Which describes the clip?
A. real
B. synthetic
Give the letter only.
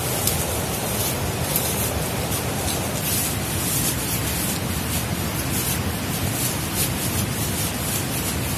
A